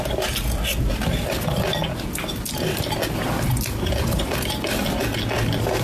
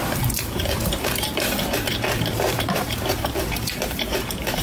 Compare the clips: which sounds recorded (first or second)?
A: first